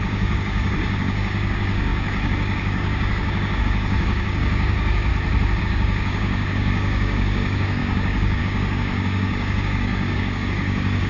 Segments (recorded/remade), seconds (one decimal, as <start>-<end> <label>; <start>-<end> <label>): 0.0-5.1 remade; 5.1-5.6 recorded; 5.6-11.1 remade